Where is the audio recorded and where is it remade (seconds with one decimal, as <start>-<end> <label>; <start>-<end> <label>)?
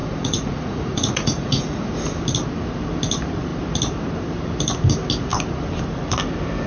0.0-1.9 remade; 1.9-6.7 recorded